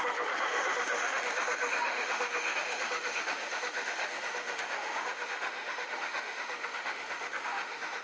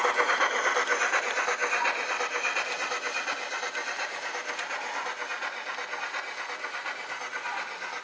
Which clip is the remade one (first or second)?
first